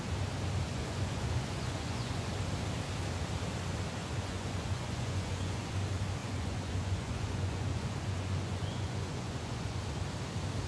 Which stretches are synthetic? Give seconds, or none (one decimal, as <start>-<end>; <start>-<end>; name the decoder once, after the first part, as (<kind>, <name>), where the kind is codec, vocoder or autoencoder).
0.7-2.3 (vocoder, Vocos); 4.0-5.8; 6.2-9.8